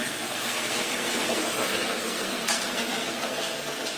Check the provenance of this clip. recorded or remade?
remade